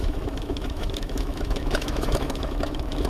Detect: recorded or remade remade